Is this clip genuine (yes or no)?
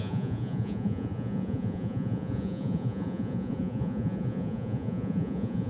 no